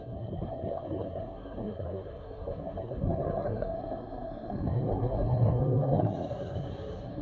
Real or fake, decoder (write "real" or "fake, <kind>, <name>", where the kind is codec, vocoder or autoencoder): fake, codec, SNAC